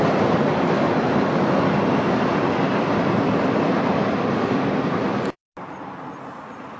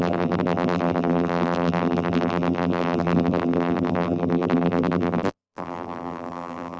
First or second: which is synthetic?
second